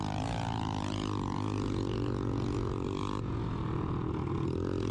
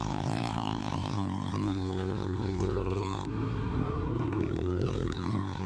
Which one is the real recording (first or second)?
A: first